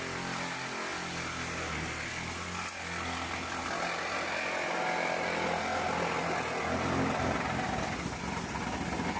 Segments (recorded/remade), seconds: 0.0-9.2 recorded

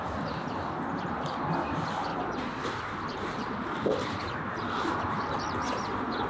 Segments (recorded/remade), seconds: 0.0-2.1 recorded; 2.1-2.6 remade; 2.6-5.6 recorded; 5.6-6.3 remade